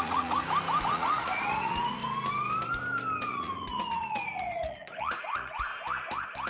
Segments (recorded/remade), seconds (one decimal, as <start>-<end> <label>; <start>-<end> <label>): 0.0-0.4 remade; 0.4-0.9 recorded; 0.9-2.0 remade; 2.0-3.3 recorded; 3.3-5.7 remade; 5.7-6.5 recorded